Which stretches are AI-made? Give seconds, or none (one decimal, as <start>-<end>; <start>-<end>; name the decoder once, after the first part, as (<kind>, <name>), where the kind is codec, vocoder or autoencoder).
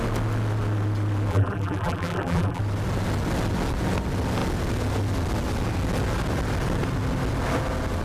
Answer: 1.3-2.6 (vocoder, BigVGAN v2)